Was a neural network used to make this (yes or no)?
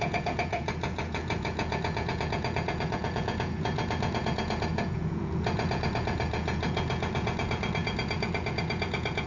yes